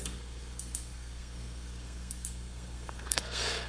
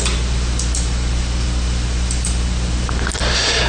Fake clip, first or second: first